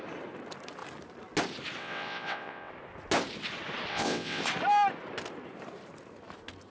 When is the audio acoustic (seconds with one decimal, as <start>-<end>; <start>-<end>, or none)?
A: 0.0-1.8; 2.7-3.9; 4.4-6.7